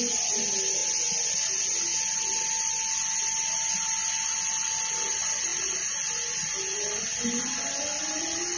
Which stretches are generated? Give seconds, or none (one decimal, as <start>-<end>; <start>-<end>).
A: none